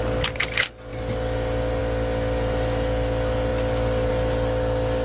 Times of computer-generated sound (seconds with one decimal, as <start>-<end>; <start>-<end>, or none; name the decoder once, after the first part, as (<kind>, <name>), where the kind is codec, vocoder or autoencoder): none